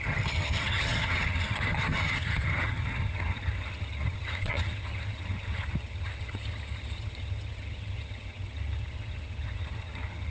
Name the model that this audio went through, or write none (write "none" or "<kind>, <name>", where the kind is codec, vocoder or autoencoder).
vocoder, HiFi-GAN